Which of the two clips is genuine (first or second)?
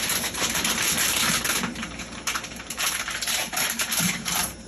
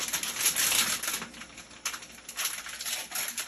second